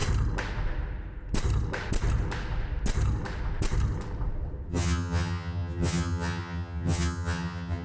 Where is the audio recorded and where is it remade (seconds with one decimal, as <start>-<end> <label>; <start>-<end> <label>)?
0.0-4.7 recorded; 4.7-7.8 remade